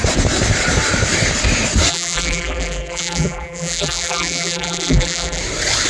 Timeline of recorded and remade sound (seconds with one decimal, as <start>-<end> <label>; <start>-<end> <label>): 0.0-1.9 recorded; 1.9-5.4 remade; 5.4-5.9 recorded